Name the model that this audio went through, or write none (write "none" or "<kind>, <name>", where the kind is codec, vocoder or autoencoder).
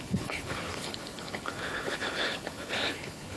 codec, HILCodec